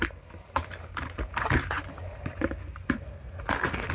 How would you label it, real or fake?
real